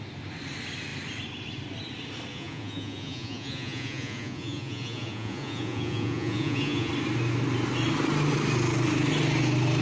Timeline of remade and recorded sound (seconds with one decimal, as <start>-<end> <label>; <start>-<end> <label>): 0.0-2.3 recorded; 2.3-6.9 remade; 6.9-9.8 recorded